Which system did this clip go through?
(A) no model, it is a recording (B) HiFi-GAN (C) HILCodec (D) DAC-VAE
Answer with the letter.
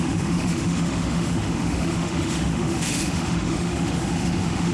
D